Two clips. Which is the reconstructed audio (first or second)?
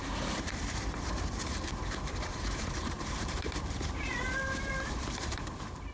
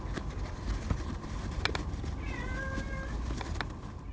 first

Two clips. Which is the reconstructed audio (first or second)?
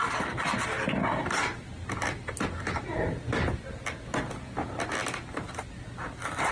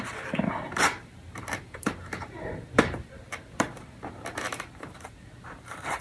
second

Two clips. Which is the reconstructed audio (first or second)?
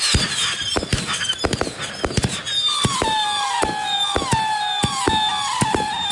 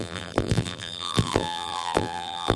second